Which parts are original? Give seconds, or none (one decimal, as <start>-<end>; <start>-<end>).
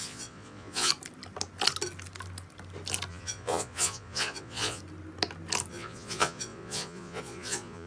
0.9-3.1; 4.8-5.7